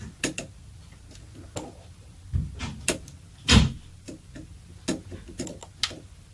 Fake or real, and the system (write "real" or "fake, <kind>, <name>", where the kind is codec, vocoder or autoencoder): real